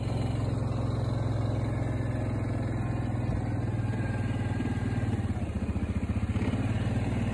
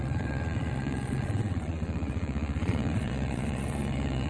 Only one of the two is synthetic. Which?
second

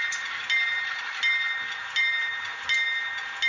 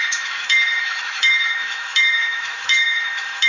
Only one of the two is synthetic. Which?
second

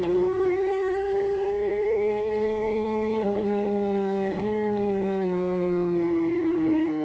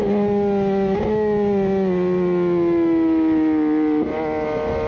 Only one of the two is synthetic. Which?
first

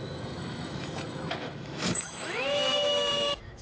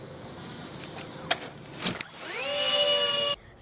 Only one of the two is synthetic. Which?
first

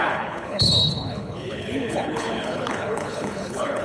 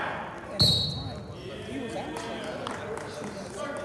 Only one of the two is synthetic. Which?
first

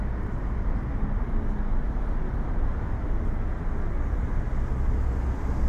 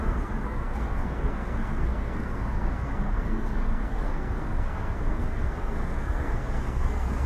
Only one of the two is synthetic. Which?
second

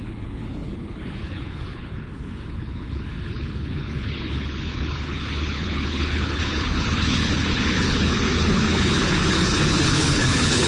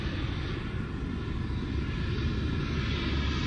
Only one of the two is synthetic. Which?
first